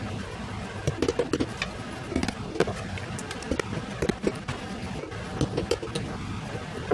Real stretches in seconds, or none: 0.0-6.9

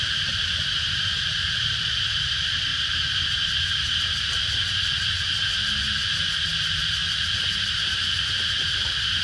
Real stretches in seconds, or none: 2.7-4.0

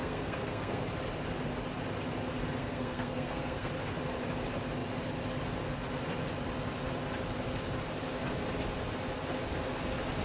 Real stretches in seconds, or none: 0.8-2.6; 3.7-10.2

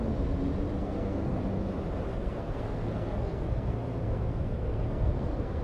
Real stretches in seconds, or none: 0.0-0.8; 1.4-2.1

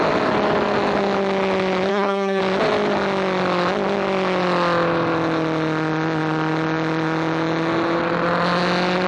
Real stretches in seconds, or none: 0.0-1.9; 2.4-9.1